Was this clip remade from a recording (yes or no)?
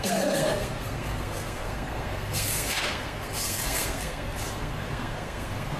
yes